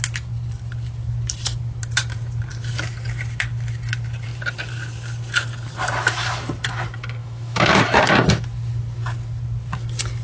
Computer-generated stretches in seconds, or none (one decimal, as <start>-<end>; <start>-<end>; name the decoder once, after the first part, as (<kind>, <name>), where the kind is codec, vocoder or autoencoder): 7.2-8.0 (autoencoder, DAC-VAE)